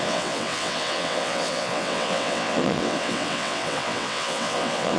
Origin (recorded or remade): remade